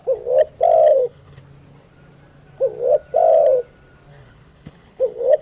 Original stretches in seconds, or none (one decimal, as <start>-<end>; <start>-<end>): 0.0-0.9; 1.4-4.1